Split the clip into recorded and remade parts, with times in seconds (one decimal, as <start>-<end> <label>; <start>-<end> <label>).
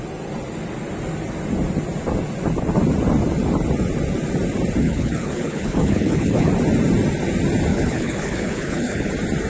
0.0-4.8 recorded; 4.8-6.5 remade; 6.5-7.7 recorded; 7.7-9.1 remade; 9.1-9.5 recorded